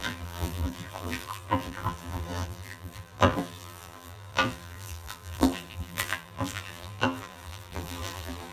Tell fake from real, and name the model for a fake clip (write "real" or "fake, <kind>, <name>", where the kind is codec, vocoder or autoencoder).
fake, vocoder, BigVGAN v2